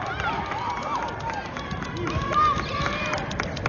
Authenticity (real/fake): real